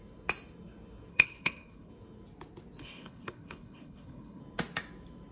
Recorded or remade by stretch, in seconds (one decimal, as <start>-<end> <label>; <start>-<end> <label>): 0.0-1.1 recorded; 1.1-1.9 remade; 1.9-2.8 recorded; 2.8-4.4 remade; 4.4-5.3 recorded